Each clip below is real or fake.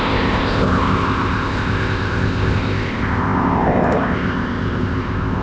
fake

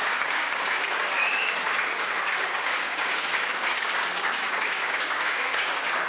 fake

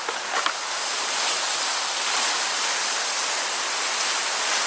real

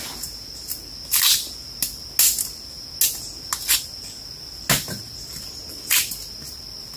real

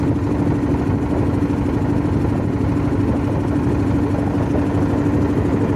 real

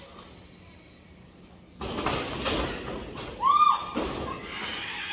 real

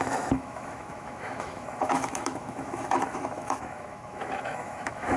fake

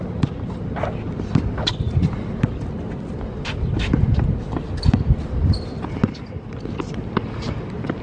real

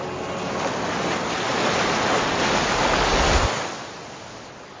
real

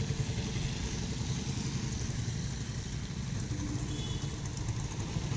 real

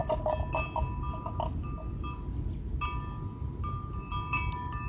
real